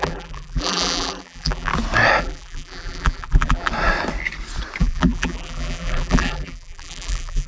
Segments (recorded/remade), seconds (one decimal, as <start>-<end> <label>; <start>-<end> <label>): 0.0-1.7 remade; 1.7-2.2 recorded; 2.2-3.7 remade; 3.7-4.8 recorded; 4.8-7.5 remade